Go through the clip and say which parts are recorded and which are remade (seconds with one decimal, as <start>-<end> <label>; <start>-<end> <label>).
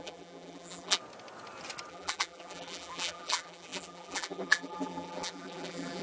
0.0-1.0 remade; 1.0-1.9 recorded; 1.9-6.0 remade